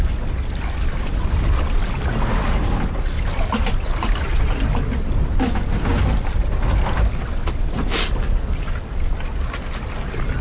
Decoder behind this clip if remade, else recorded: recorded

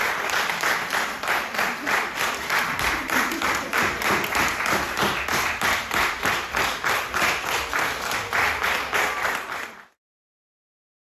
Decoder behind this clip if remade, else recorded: recorded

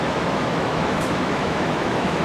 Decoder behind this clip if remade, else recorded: remade, autoencoder, DAC-VAE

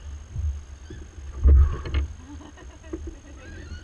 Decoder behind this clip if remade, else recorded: recorded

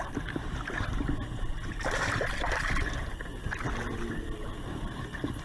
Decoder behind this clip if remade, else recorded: recorded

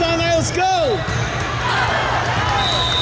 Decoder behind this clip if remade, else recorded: recorded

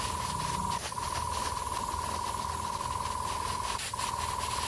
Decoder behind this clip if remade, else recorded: recorded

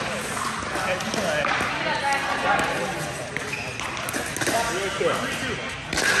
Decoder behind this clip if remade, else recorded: recorded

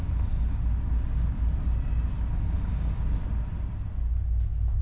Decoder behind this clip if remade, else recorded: recorded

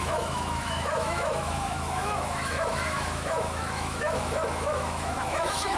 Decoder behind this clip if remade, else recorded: remade, autoencoder, DAC-VAE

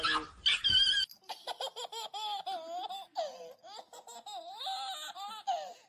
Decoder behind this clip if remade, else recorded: recorded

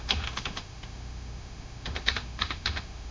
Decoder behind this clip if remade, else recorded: remade, autoencoder, DAC-VAE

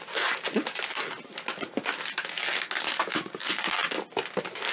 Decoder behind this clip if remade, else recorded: recorded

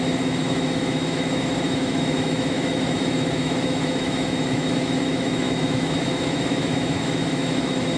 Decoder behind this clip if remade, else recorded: remade, autoencoder, DAC-VAE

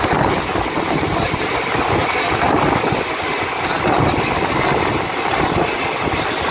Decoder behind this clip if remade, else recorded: recorded